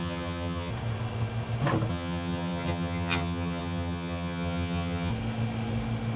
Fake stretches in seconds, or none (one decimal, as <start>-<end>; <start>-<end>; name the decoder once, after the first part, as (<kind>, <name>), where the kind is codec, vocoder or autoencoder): 0.0-0.7 (vocoder, HiFi-GAN); 1.9-5.1

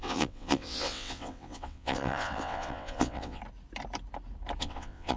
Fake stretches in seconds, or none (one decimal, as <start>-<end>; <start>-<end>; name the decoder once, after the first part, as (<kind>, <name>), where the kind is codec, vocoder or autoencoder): 0.0-3.4 (vocoder, WaveNeXt); 4.6-5.2